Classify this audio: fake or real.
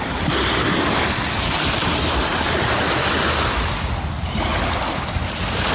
real